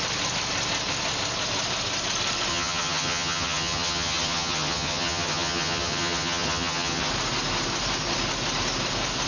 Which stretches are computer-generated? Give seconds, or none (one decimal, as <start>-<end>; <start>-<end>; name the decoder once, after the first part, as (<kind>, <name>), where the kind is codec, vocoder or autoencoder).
2.5-7.1 (vocoder, HiFi-GAN)